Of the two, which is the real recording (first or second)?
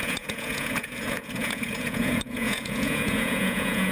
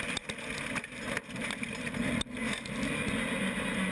second